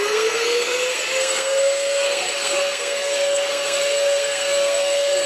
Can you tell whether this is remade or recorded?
remade